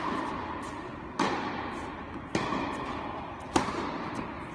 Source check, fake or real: real